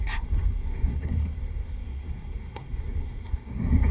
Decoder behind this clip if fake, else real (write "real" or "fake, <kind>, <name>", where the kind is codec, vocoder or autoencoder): fake, codec, SNAC